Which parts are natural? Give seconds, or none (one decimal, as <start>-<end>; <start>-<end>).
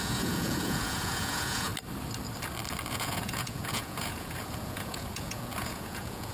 1.7-2.9